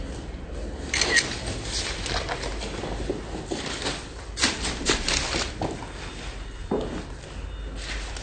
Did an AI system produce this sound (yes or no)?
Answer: no